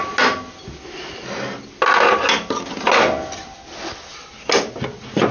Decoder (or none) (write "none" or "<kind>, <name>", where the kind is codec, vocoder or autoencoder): none